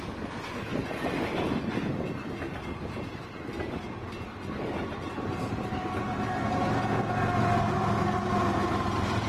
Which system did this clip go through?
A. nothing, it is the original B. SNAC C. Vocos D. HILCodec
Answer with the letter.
A